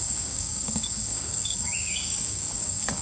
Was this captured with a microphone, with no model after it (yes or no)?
no